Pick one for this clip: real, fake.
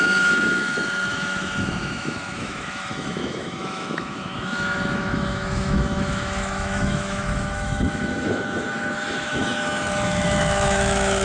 fake